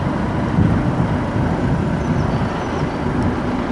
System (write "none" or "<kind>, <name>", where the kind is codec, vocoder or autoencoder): none